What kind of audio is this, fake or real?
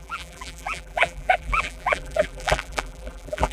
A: fake